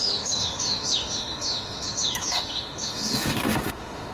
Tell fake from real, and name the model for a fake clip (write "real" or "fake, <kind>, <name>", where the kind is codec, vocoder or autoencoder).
fake, autoencoder, DAC-VAE